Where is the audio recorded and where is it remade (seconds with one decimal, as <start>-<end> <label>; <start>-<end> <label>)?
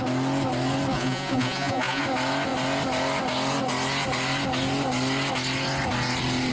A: 0.0-0.9 recorded; 0.9-2.0 remade; 2.0-6.5 recorded